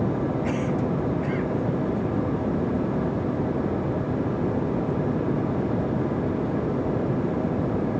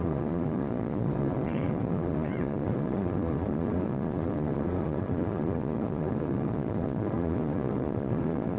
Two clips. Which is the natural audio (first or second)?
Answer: first